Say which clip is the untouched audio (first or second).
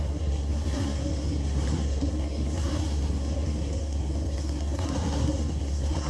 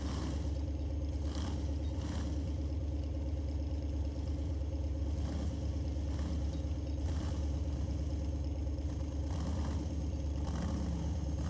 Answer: second